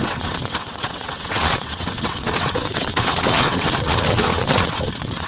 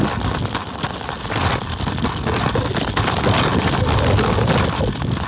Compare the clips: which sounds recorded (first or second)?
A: second